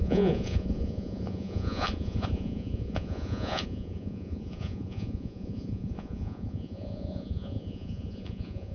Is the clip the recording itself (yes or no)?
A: no